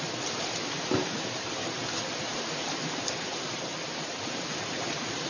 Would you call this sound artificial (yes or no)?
yes